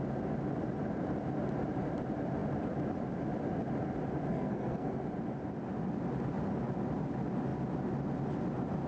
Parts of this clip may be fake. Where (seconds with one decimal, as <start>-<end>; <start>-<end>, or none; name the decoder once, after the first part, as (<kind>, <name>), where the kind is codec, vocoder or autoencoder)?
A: 4.3-5.0 (codec, SNAC)